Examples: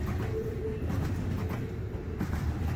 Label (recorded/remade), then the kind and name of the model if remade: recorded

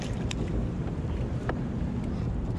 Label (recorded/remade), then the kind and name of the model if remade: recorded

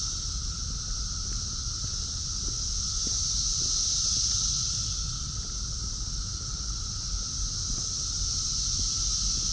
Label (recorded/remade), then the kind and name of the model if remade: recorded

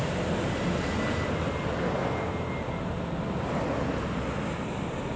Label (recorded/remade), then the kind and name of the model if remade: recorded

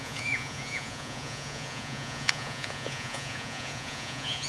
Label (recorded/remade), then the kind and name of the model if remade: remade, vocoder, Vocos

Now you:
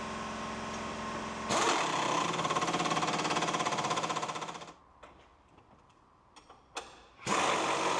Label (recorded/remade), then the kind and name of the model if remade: recorded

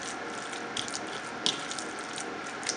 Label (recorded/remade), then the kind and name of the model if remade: recorded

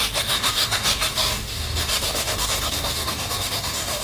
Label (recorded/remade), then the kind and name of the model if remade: remade, codec, DAC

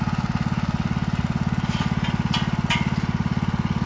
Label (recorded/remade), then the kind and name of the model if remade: recorded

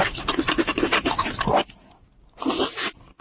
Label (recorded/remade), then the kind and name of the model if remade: recorded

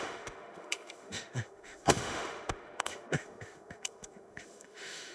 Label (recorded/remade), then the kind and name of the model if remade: remade, autoencoder, DAC-VAE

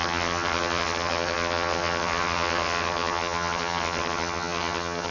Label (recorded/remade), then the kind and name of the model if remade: remade, vocoder, HiFi-GAN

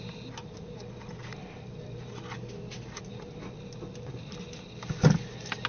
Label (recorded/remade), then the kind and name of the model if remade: recorded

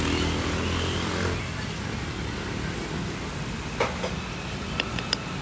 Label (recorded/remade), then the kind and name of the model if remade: recorded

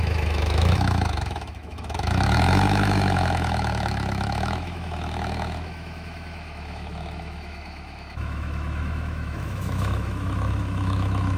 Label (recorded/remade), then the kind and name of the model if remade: remade, autoencoder, DAC-VAE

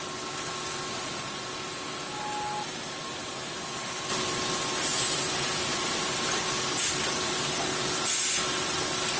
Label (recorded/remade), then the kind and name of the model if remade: recorded